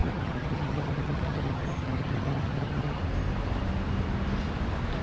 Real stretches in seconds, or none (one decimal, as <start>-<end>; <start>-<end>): 3.0-5.0